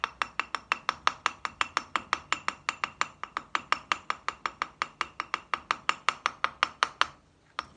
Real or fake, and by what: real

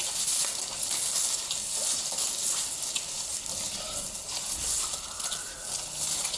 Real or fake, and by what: real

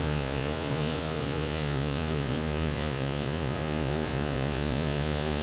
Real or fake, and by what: fake, vocoder, Vocos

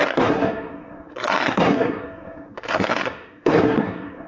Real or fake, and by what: fake, codec, SNAC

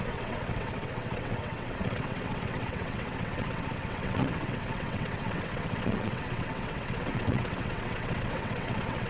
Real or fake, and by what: fake, vocoder, WaveNeXt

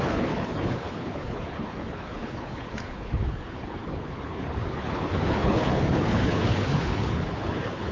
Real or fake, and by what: fake, codec, HILCodec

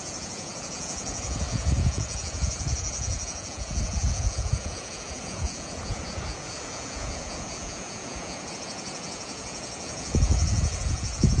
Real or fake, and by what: fake, vocoder, Vocos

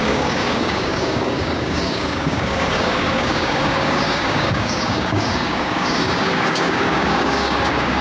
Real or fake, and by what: fake, codec, DAC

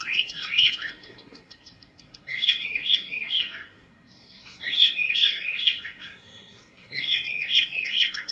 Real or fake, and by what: fake, codec, SNAC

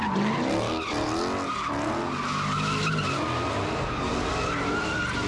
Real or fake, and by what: real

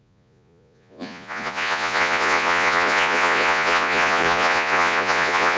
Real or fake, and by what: fake, vocoder, Vocos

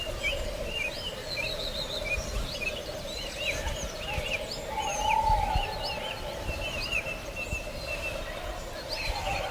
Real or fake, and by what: real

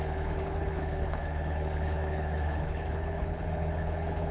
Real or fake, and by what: fake, codec, HILCodec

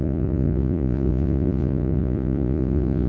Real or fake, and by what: fake, vocoder, Vocos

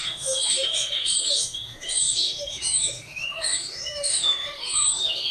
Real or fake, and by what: fake, autoencoder, DAC-VAE